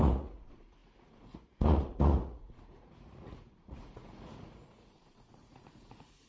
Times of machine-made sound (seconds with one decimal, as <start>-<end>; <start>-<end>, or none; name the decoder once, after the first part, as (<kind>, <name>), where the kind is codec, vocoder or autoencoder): 0.0-6.3 (vocoder, Vocos)